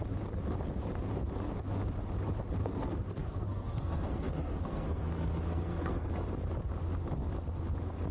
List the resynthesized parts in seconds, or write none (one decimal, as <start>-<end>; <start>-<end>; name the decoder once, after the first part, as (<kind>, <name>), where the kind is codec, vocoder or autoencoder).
2.6-6.1 (codec, SNAC)